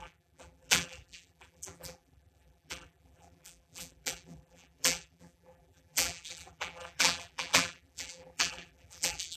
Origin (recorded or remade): remade